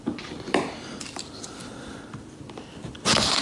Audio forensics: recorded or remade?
remade